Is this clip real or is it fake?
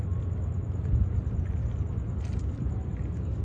real